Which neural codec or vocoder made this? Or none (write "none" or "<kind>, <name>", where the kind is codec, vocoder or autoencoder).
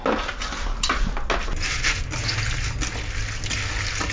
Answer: none